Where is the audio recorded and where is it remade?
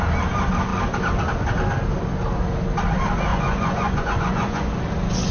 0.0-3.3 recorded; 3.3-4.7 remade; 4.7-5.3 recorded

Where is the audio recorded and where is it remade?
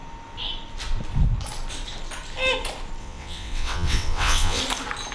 0.0-3.0 recorded; 3.0-4.6 remade; 4.6-5.1 recorded